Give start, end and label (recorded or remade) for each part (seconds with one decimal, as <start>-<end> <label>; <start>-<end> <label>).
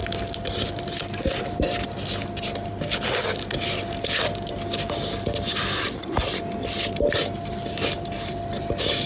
0.0-9.1 recorded